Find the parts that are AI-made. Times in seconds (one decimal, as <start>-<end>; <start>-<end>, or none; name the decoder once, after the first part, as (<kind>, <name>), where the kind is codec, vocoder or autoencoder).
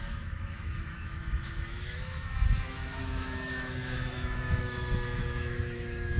0.0-6.2 (autoencoder, DAC-VAE)